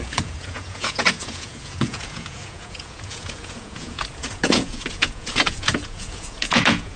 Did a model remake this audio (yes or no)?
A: yes